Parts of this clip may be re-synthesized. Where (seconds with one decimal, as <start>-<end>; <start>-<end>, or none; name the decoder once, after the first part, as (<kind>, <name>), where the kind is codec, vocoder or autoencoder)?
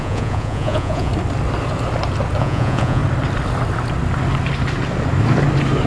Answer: 0.0-1.1 (vocoder, Vocos); 2.4-3.0